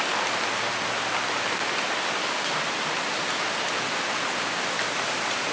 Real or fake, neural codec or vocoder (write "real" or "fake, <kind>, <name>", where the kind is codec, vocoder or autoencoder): real